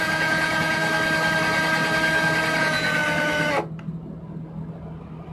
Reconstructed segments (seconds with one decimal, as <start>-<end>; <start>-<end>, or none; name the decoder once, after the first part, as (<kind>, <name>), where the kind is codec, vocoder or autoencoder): 0.0-0.8 (vocoder, Vocos); 2.6-3.0